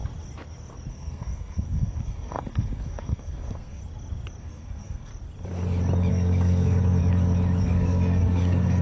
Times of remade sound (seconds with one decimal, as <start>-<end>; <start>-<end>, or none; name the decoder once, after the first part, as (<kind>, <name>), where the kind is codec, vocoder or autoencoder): 0.9-3.8 (codec, SNAC); 4.4-5.1; 6.1-7.0; 7.6-8.8